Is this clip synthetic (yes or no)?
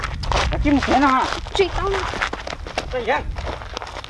no